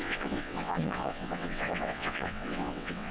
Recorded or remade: remade